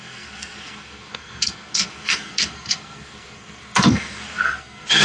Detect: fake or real fake